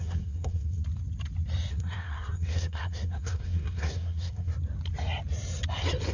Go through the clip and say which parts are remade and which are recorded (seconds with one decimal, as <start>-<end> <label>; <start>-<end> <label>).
0.0-0.8 remade; 0.8-1.7 recorded; 1.7-4.5 remade; 4.5-6.1 recorded